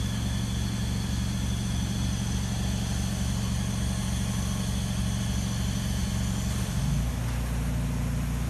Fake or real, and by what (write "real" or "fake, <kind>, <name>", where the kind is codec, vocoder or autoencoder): real